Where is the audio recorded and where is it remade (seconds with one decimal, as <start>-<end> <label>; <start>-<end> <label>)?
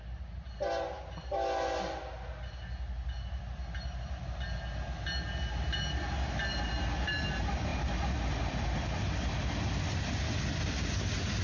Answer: 0.0-11.4 recorded